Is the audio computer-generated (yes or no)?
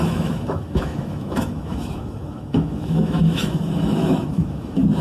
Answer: yes